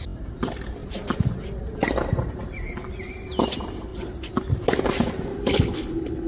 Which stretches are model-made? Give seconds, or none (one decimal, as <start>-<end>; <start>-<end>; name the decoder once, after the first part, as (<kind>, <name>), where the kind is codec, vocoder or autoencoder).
5.3-6.3 (codec, HILCodec)